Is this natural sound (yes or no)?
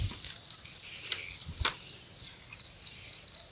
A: yes